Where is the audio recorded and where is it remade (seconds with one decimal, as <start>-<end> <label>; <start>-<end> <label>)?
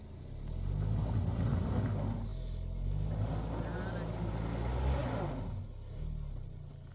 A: 0.0-6.9 recorded